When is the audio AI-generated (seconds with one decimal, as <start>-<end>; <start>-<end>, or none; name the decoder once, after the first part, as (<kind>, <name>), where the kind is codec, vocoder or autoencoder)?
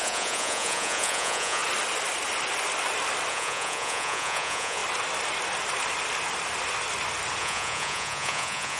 0.0-1.6 (vocoder, Vocos); 3.3-4.8; 7.4-8.8